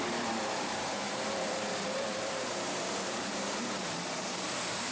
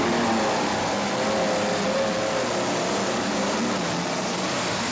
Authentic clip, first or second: second